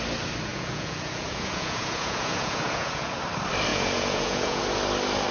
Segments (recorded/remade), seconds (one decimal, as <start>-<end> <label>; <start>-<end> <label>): 0.0-0.5 recorded; 0.5-3.2 remade; 3.2-3.7 recorded; 3.7-4.6 remade; 4.6-5.3 recorded